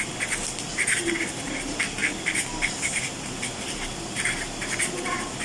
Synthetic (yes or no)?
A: yes